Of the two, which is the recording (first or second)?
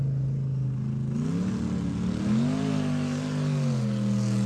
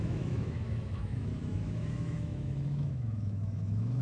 first